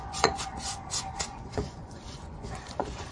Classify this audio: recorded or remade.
remade